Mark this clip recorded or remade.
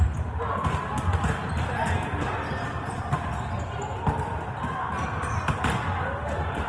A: recorded